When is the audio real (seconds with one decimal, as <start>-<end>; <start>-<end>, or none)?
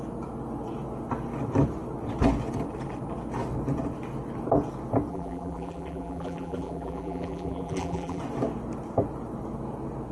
0.0-5.1; 8.2-10.1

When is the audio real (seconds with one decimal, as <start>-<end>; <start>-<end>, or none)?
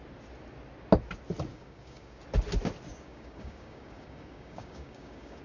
0.0-1.5; 2.2-2.9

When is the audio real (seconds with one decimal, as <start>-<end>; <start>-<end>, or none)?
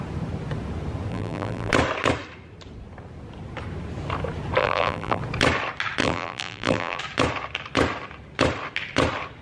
0.0-1.1; 1.7-4.6; 5.2-6.0; 7.0-9.4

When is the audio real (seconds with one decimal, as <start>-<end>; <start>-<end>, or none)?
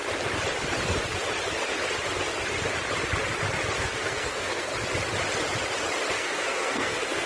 0.0-3.8; 4.7-6.1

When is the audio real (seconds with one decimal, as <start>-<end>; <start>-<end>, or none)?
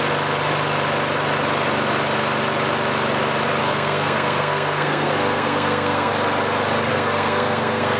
0.0-3.6; 6.1-6.9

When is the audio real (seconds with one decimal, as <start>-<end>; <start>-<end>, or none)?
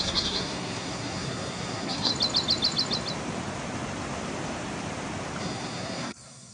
2.1-5.4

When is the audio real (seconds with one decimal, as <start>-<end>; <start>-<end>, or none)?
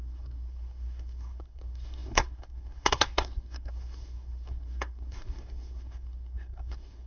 none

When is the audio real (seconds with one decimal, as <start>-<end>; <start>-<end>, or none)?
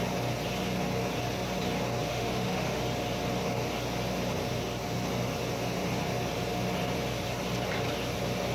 0.0-2.1; 2.8-8.5